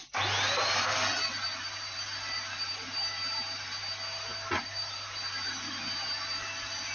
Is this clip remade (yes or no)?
no